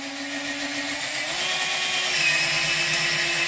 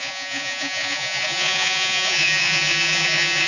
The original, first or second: first